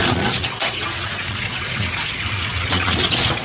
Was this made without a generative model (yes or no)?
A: no